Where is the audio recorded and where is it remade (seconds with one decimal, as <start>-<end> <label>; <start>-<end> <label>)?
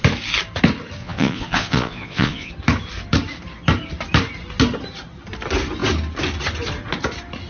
0.0-1.0 recorded; 1.0-2.5 remade; 2.5-7.5 recorded